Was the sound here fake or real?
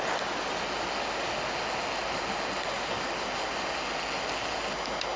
real